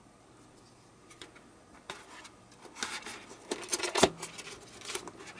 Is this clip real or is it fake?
real